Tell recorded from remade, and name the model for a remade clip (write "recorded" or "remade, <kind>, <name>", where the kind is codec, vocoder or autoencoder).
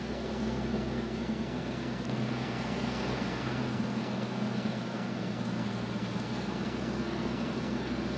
remade, codec, SNAC